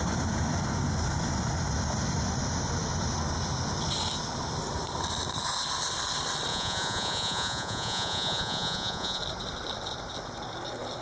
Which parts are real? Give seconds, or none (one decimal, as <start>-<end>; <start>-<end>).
0.0-6.5; 9.2-11.0